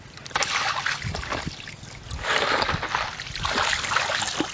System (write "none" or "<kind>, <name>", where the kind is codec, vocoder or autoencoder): none